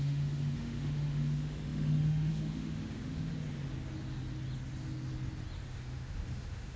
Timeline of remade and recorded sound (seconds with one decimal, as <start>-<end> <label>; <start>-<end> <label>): 0.0-3.3 remade; 3.3-5.7 recorded; 5.7-6.8 remade